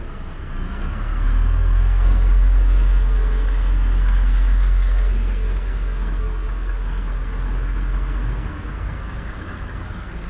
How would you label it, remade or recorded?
remade